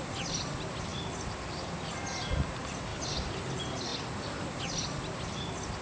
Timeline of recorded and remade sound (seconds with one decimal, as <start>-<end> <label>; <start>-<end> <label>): 0.0-5.8 recorded